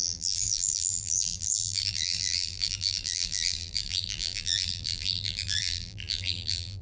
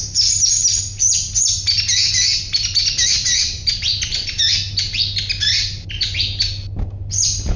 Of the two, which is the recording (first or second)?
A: second